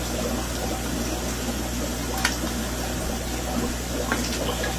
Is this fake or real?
real